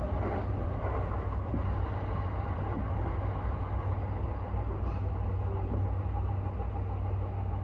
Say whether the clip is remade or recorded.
recorded